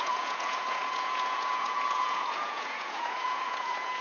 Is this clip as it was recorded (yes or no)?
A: no